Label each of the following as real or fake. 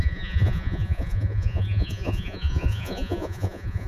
fake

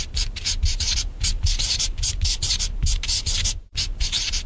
fake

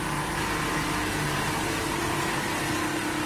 real